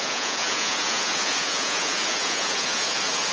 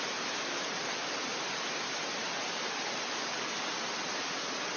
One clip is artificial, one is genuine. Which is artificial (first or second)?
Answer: first